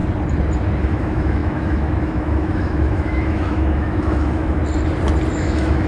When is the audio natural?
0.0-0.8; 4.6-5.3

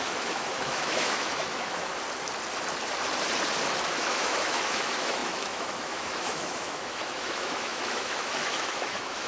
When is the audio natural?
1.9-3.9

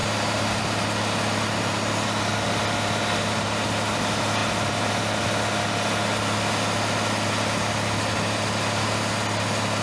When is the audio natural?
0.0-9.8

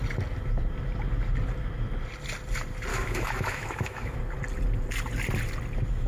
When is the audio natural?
0.0-2.9; 4.2-6.1

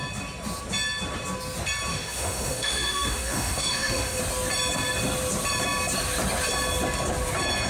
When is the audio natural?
0.0-1.9; 4.2-7.7